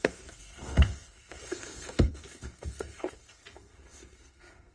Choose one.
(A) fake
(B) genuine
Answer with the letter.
A